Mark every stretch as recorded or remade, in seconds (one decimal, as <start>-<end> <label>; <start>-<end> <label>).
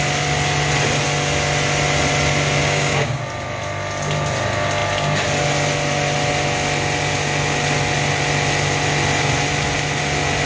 0.0-2.6 recorded; 2.6-3.2 remade; 3.2-10.4 recorded